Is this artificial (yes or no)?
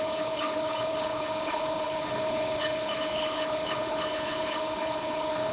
yes